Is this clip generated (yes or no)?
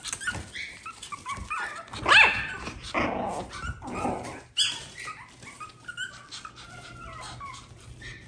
no